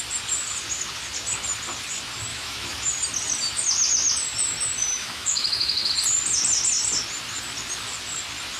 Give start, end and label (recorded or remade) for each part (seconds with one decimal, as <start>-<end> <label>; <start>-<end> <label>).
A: 0.0-2.3 recorded; 2.3-2.9 remade; 2.9-4.9 recorded; 4.9-5.9 remade; 5.9-8.6 recorded